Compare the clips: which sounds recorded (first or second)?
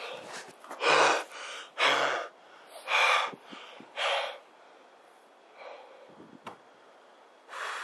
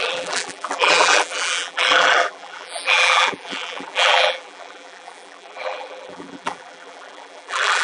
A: first